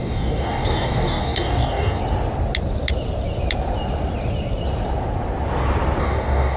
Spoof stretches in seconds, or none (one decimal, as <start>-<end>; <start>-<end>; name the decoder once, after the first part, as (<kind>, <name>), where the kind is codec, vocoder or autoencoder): 0.0-2.0 (codec, DAC); 6.0-6.6